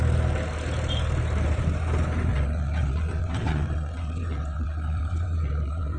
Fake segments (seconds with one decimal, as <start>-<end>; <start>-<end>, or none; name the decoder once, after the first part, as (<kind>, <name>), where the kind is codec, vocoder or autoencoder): 2.3-6.0 (vocoder, WaveNeXt)